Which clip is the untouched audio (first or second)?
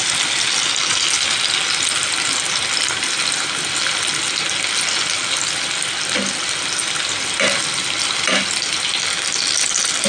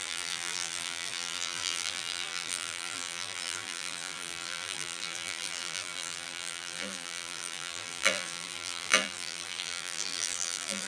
first